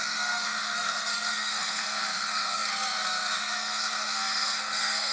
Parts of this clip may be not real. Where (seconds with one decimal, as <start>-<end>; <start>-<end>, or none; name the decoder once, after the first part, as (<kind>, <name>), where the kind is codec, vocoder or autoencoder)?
0.0-5.1 (codec, SNAC)